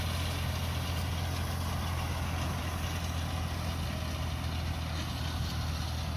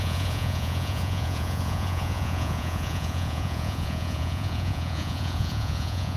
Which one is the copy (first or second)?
second